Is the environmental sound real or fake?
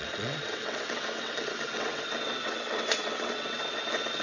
fake